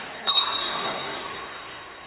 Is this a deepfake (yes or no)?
yes